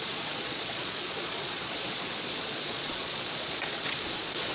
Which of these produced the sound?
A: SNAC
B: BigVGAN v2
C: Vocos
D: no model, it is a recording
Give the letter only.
C